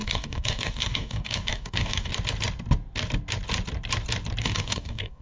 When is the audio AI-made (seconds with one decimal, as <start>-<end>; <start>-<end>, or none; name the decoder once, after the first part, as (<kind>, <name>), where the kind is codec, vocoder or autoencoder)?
0.0-2.1 (codec, DAC); 4.4-5.2